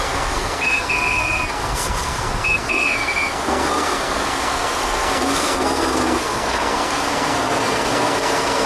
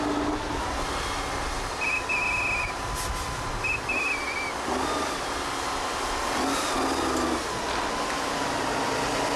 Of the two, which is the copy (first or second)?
first